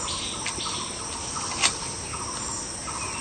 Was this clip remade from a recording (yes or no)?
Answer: no